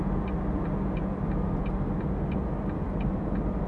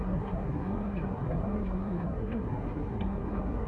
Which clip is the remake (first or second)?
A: second